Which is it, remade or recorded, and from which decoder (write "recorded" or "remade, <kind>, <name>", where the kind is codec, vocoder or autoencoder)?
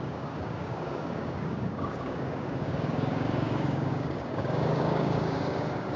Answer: remade, codec, DAC